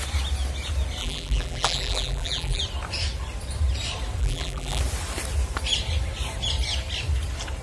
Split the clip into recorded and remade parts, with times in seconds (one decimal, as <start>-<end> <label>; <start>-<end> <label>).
0.0-1.0 recorded; 1.0-2.6 remade; 2.6-4.2 recorded; 4.2-4.8 remade; 4.8-7.6 recorded